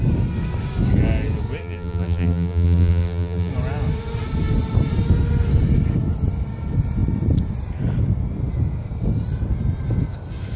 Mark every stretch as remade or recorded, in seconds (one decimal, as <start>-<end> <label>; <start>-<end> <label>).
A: 0.0-1.6 recorded; 1.6-3.5 remade; 3.5-10.6 recorded